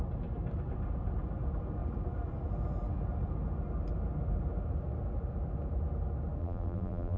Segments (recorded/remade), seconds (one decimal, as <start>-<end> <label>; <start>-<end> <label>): 0.0-6.4 recorded; 6.4-7.2 remade

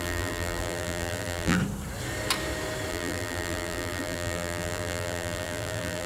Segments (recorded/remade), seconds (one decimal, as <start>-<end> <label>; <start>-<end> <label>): 0.0-1.6 remade; 1.6-2.9 recorded; 2.9-6.1 remade

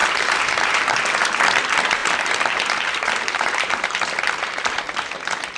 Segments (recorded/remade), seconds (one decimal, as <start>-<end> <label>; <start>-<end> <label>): 0.0-1.0 remade; 1.0-2.0 recorded; 2.0-4.0 remade; 4.0-5.6 recorded

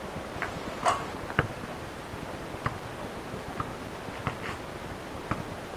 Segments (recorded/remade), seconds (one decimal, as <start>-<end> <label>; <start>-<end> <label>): 0.0-2.1 remade; 2.1-3.1 recorded; 3.1-3.7 remade; 3.7-5.1 recorded; 5.1-5.8 remade

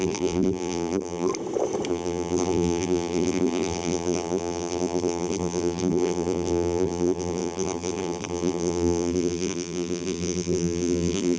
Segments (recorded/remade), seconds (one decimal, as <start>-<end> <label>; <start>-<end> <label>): 0.0-1.3 remade; 1.3-1.9 recorded; 1.9-11.4 remade

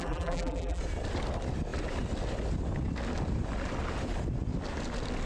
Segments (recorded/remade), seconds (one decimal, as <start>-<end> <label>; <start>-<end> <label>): 0.0-0.8 remade; 0.8-5.3 recorded